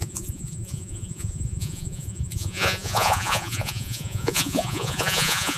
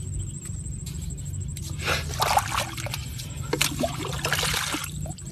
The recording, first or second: second